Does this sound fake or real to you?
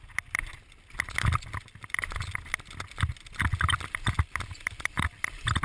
real